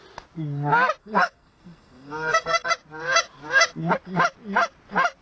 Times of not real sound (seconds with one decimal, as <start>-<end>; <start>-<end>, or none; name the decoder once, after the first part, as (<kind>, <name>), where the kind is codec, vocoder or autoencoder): 1.0-2.7 (codec, SNAC)